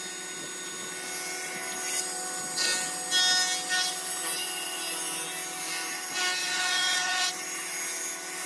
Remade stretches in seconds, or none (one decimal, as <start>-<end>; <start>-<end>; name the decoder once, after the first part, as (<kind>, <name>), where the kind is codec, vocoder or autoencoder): 6.4-7.3 (vocoder, Vocos)